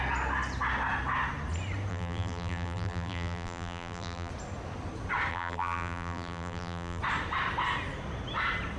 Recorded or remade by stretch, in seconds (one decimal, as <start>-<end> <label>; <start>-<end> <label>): 0.0-1.9 recorded; 1.9-4.3 remade; 4.3-5.3 recorded; 5.3-7.0 remade; 7.0-8.8 recorded